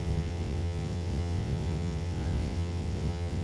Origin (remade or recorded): remade